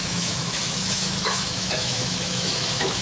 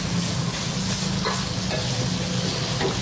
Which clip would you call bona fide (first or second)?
second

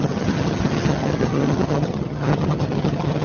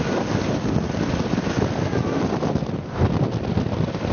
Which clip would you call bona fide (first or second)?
second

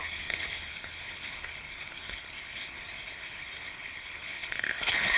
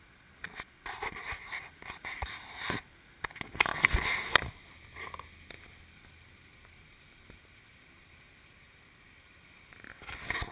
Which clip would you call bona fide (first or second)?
second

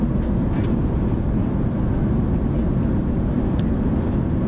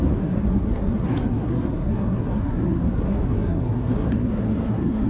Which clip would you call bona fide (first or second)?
first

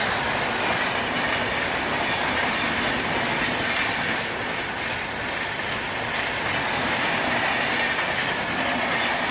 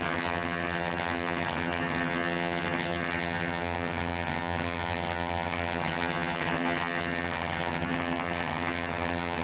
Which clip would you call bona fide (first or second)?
first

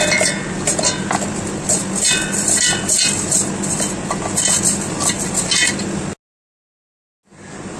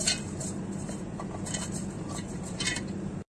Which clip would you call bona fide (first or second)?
first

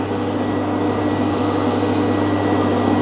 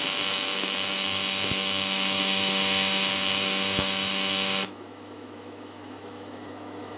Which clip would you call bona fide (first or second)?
first